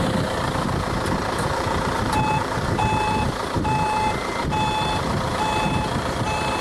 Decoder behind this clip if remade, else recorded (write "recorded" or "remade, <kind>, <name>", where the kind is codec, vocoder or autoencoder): remade, vocoder, BigVGAN v2